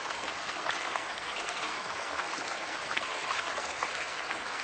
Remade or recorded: remade